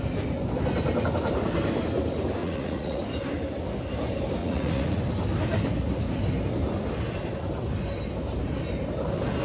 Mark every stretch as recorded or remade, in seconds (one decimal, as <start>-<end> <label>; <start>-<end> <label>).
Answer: 0.0-2.4 recorded; 2.4-3.0 remade; 3.0-4.4 recorded; 4.4-5.0 remade; 5.0-9.4 recorded